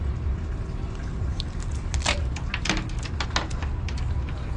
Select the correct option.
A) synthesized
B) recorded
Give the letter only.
B